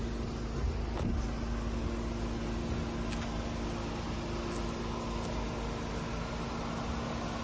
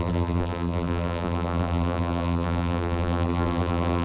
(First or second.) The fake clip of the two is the second